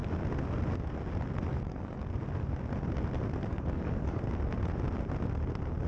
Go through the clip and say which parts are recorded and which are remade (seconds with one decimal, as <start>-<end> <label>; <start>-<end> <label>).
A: 0.0-1.5 recorded; 1.5-2.0 remade; 2.0-3.5 recorded; 3.5-4.2 remade; 4.2-5.9 recorded